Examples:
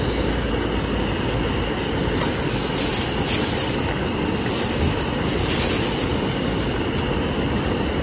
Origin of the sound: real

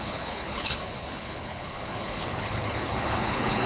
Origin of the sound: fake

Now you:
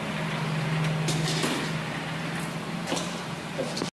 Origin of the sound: real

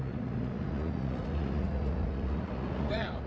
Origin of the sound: fake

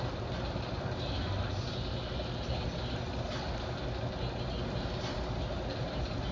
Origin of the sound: real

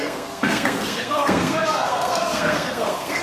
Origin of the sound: fake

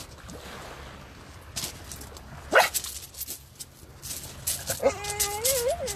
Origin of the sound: real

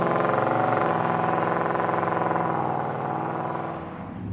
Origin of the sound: real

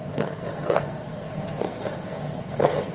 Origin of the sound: fake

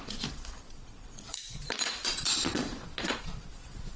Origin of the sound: fake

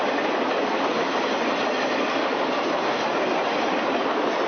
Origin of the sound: real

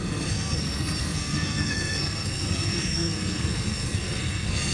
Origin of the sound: fake